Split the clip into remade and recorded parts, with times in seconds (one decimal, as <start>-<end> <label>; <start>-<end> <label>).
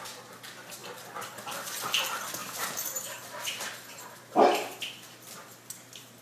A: 0.0-6.2 recorded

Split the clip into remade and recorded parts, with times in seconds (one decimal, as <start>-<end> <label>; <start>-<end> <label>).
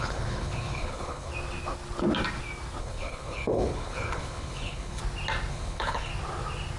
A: 0.0-1.3 remade; 1.3-2.8 recorded; 2.8-5.0 remade; 5.0-5.5 recorded; 5.5-6.1 remade; 6.1-6.8 recorded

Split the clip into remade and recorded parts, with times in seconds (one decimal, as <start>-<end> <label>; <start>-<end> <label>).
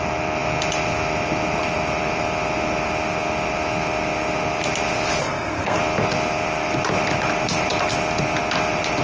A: 0.0-5.2 recorded; 5.2-5.8 remade; 5.8-9.0 recorded